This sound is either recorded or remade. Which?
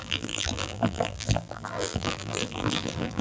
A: remade